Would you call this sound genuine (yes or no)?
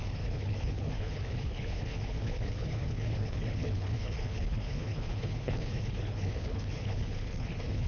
no